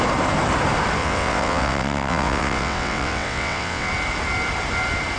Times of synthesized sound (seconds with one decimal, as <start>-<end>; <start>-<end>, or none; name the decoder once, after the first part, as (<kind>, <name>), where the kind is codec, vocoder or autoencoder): 1.0-3.9 (vocoder, WaveNeXt)